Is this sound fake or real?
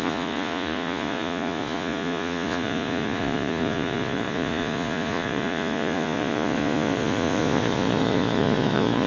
fake